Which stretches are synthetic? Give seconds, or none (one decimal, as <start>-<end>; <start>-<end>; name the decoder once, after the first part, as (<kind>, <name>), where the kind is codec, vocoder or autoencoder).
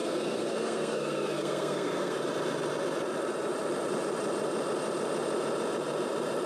0.0-2.2 (codec, SNAC)